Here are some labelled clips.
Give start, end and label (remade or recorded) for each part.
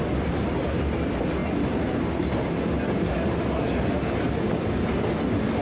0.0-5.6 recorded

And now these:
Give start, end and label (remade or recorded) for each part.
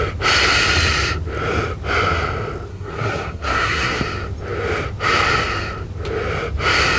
0.0-2.7 recorded; 2.7-4.0 remade; 4.0-7.0 recorded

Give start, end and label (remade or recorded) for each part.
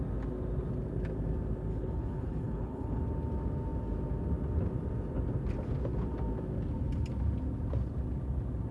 0.0-1.7 recorded; 1.7-3.0 remade; 3.0-8.7 recorded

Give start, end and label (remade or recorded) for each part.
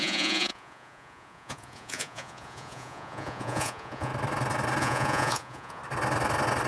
0.0-4.1 remade; 4.1-4.8 recorded; 4.8-5.8 remade; 5.8-6.7 recorded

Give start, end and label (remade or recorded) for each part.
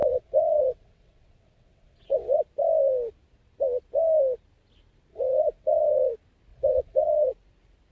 0.0-2.4 remade; 2.4-5.1 recorded; 5.1-6.1 remade; 6.1-6.5 recorded; 6.5-7.3 remade; 7.3-7.9 recorded